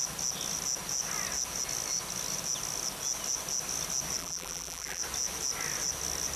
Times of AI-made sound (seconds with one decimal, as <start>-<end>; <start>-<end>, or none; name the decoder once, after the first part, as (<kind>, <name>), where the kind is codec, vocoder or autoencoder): 4.2-5.0 (vocoder, BigVGAN v2)